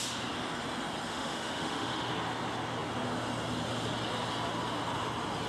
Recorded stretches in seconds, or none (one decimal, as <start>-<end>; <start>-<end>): 0.0-1.1; 2.1-5.5